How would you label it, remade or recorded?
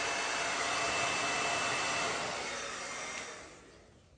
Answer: recorded